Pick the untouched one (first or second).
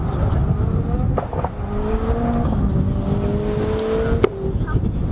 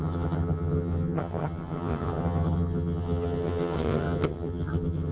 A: first